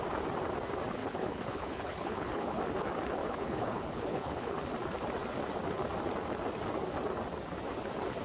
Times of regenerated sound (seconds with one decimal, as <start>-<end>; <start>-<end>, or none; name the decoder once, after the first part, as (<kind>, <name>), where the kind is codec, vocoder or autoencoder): 1.0-2.6 (codec, HILCodec); 3.2-4.6